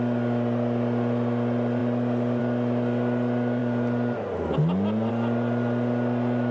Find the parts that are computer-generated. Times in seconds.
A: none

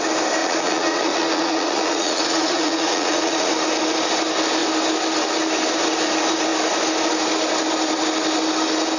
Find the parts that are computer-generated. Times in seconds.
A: 0.4-3.5

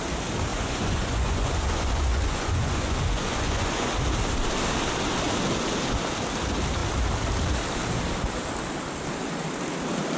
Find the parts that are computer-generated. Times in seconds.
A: 0.5-3.9

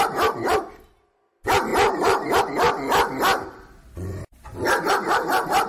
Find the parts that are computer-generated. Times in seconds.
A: 1.7-2.4

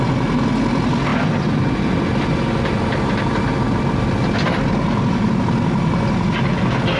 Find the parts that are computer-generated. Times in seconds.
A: none

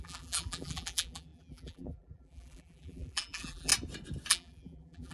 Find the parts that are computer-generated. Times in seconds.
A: 0.0-3.7; 4.3-5.1